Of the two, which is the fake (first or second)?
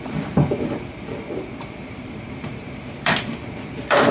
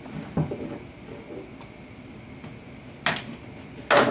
first